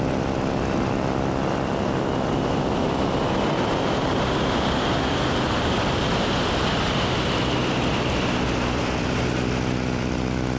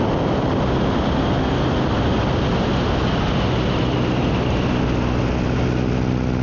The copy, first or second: first